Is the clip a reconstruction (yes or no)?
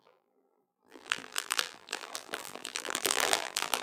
yes